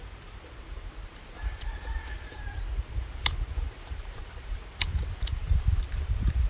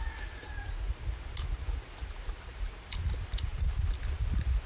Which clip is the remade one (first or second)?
first